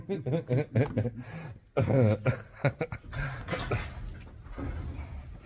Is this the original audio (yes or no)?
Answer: yes